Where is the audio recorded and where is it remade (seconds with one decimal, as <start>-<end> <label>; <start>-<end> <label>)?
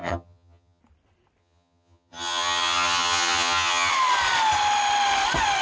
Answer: 0.0-0.8 remade; 0.8-1.4 recorded; 1.4-3.9 remade; 3.9-5.6 recorded